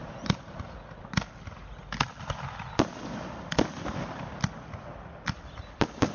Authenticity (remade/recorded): recorded